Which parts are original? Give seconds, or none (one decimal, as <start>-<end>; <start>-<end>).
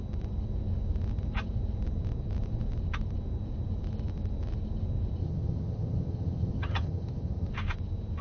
0.0-5.2; 7.5-8.2